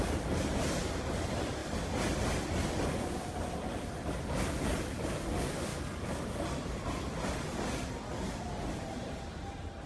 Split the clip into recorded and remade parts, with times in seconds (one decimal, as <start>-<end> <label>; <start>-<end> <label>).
0.0-9.9 recorded